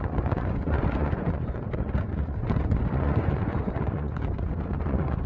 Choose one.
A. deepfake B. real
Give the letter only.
A